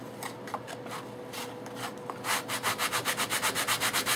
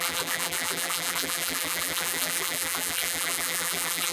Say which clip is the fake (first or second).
second